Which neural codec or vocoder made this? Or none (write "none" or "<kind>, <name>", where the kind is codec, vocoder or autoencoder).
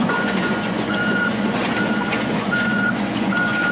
vocoder, Vocos